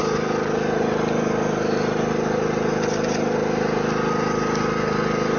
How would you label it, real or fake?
real